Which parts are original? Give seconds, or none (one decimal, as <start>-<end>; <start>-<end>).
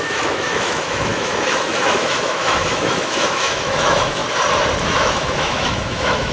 4.2-4.8